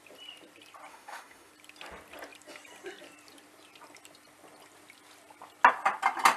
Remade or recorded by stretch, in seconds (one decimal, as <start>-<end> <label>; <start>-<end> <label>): 0.0-0.9 recorded; 0.9-1.5 remade; 1.5-6.4 recorded